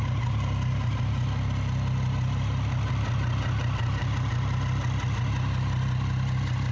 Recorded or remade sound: recorded